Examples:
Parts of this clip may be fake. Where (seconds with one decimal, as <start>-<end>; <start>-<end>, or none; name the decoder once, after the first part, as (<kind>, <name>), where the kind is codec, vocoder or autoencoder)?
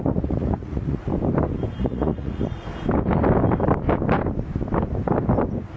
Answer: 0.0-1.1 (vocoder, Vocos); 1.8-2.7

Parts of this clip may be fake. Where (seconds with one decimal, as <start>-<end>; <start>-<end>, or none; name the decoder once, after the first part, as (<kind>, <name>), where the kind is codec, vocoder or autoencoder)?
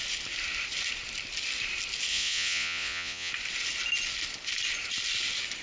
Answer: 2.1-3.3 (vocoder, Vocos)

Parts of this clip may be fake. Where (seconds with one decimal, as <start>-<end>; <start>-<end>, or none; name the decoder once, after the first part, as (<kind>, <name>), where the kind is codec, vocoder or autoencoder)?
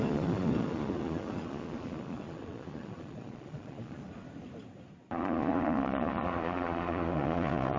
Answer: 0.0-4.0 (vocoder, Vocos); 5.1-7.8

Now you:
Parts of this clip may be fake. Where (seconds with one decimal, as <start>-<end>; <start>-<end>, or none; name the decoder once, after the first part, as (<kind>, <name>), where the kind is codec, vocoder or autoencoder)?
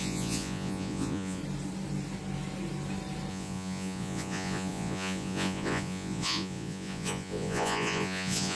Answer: 0.0-1.4 (vocoder, Vocos); 3.3-8.5